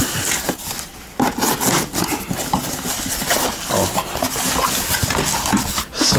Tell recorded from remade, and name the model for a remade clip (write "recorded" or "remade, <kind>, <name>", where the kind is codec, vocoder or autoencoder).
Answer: recorded